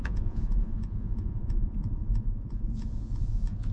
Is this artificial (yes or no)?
yes